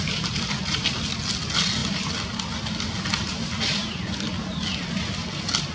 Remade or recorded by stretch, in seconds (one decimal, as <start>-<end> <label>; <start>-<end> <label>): 0.0-5.7 recorded